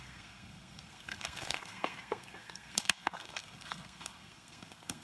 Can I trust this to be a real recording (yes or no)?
no